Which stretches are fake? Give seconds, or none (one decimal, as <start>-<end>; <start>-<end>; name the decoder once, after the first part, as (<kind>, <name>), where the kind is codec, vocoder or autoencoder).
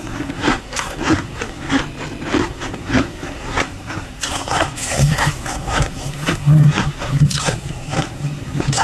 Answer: 0.0-1.8 (codec, SNAC); 2.4-8.8